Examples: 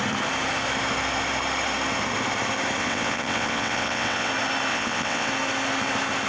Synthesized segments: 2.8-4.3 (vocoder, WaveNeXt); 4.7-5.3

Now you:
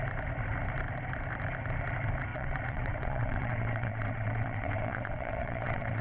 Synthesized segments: 2.3-6.0 (vocoder, WaveNeXt)

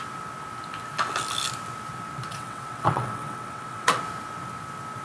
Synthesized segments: 2.3-4.0 (vocoder, WaveNeXt)

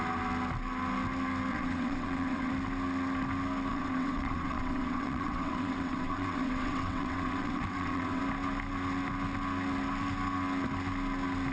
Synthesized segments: 1.5-2.5 (vocoder, WaveNeXt); 3.7-8.2

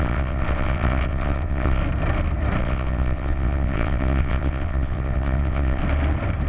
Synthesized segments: 0.0-1.8 (vocoder, WaveNeXt); 2.6-5.8

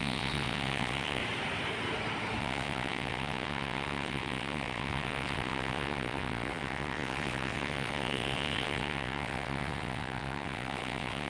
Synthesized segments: 0.0-1.2 (vocoder, WaveNeXt); 2.4-11.3

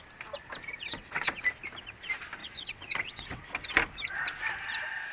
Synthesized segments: 0.9-1.4 (vocoder, WaveNeXt); 2.4-3.4

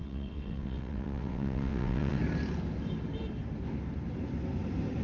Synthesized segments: 0.0-2.2 (vocoder, WaveNeXt)